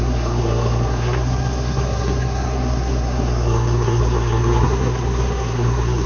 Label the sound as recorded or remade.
remade